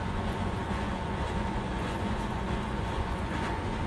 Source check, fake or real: fake